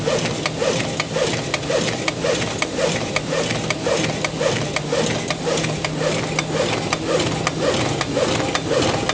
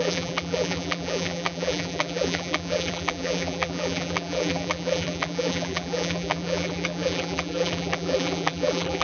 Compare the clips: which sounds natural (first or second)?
first